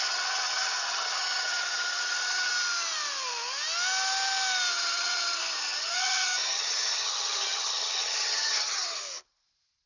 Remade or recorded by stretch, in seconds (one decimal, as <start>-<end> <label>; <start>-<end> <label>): 0.0-2.5 remade; 2.5-4.7 recorded; 4.7-9.0 remade; 9.0-9.9 recorded